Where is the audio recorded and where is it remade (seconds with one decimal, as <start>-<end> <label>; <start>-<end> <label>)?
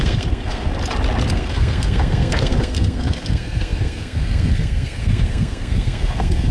0.0-0.7 remade; 0.7-1.3 recorded; 1.3-6.5 remade